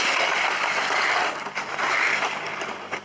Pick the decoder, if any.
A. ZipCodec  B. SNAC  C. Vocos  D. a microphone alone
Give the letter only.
D